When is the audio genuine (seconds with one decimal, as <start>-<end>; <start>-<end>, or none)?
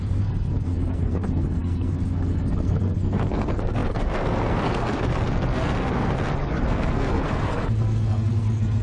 none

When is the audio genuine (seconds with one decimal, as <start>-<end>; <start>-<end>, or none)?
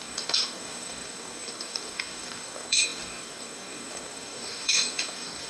none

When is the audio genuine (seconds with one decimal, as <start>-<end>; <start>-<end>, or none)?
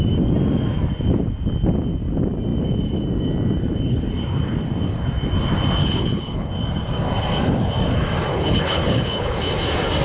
0.0-5.8; 6.5-8.3; 9.5-10.0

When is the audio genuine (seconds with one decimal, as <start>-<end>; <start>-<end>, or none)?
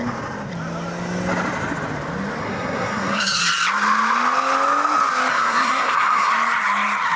0.0-2.4; 3.4-5.3; 6.3-7.2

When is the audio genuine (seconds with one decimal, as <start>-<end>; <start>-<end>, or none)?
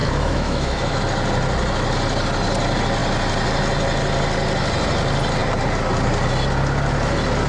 1.0-7.5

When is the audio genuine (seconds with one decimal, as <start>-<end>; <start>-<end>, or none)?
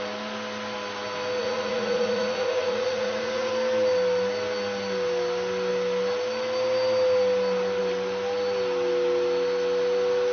0.0-1.4; 3.5-10.3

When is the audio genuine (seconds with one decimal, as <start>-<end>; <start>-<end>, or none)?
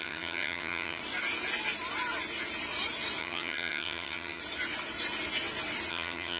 1.0-3.2; 4.4-5.9